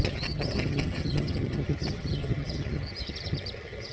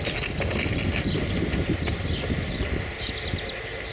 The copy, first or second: first